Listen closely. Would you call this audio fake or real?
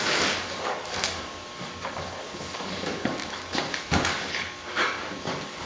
fake